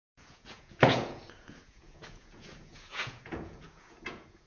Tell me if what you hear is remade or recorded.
remade